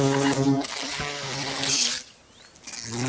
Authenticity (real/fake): real